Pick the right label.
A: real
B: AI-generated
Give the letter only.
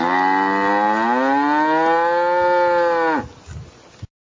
A